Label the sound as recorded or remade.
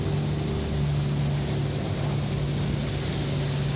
recorded